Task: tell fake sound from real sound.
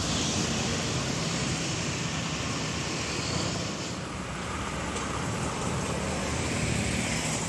fake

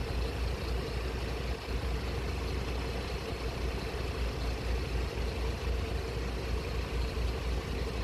real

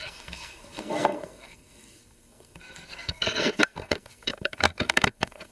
fake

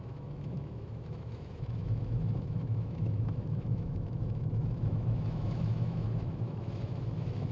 fake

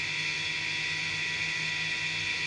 real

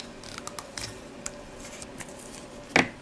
real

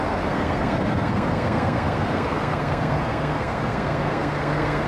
fake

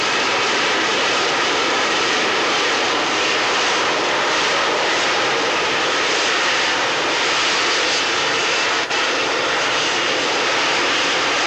fake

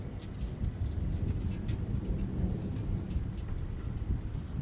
real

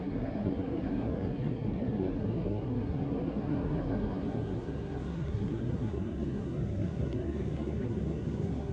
fake